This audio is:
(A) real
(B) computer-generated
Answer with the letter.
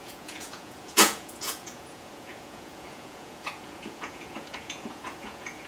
B